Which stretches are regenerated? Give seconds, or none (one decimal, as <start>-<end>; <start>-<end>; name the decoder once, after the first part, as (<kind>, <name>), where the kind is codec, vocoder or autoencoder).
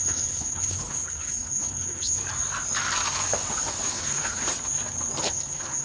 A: 0.0-2.2 (codec, HILCodec); 3.9-4.4; 5.2-5.8